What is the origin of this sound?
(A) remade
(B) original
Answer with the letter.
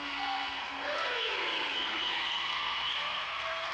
A